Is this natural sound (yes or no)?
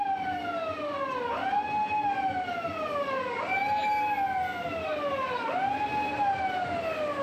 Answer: yes